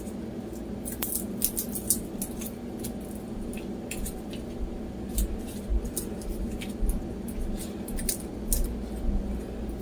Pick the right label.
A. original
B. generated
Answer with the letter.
A